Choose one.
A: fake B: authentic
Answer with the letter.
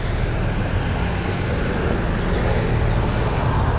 B